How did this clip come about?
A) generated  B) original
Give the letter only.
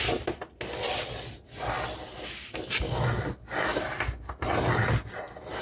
B